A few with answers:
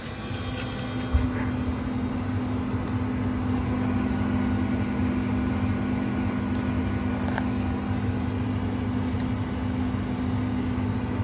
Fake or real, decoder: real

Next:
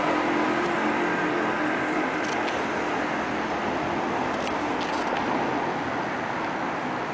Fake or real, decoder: real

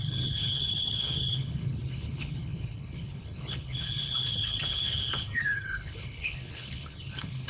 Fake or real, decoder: fake, codec, HILCodec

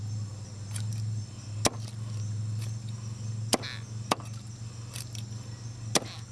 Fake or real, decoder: real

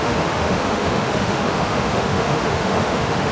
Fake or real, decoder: fake, autoencoder, DAC-VAE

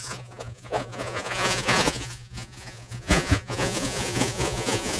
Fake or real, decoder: fake, vocoder, Vocos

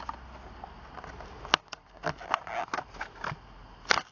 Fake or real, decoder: real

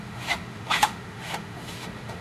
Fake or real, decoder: fake, autoencoder, DAC-VAE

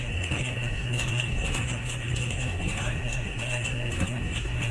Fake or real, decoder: fake, codec, SNAC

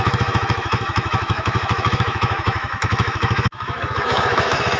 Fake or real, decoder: fake, autoencoder, DAC-VAE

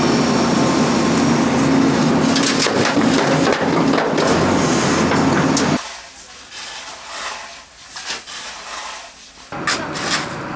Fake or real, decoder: real